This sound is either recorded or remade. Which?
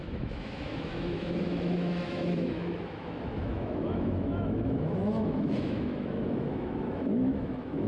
remade